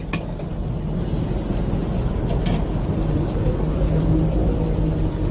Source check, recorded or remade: recorded